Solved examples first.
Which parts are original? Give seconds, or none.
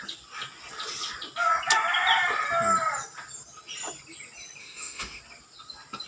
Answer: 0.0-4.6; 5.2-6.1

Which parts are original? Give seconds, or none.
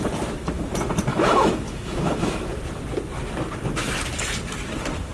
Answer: 0.0-1.1; 2.6-5.1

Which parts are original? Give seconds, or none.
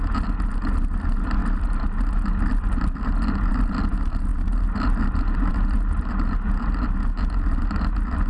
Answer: 0.0-8.3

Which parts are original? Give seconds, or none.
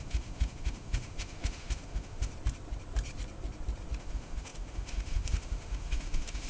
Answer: 2.3-4.0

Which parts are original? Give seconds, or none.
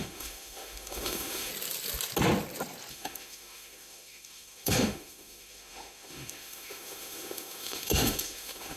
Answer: 1.5-2.9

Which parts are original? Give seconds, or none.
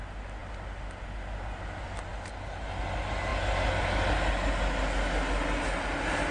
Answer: 0.0-6.3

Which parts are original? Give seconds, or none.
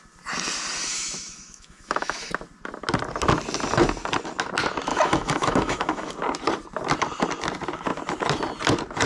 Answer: 0.0-0.9; 2.3-4.9; 6.1-9.1